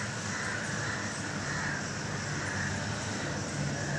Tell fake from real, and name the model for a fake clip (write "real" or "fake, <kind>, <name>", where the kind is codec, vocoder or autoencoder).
real